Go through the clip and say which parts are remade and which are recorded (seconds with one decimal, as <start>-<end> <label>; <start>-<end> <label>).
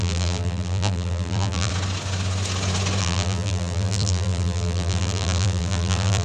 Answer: 0.0-1.7 remade; 1.7-3.0 recorded; 3.0-6.2 remade